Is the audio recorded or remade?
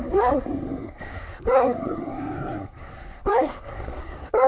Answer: remade